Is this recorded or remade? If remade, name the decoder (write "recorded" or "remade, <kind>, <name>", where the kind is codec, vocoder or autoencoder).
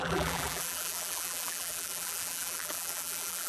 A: remade, vocoder, BigVGAN v2